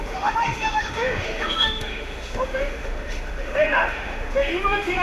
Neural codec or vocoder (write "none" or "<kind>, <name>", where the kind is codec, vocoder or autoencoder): autoencoder, DAC-VAE